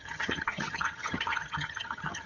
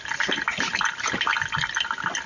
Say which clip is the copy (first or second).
first